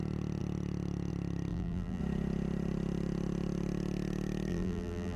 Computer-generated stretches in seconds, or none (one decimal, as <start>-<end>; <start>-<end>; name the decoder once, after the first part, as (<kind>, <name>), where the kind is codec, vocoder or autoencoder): 1.5-2.0 (vocoder, BigVGAN v2); 4.5-5.2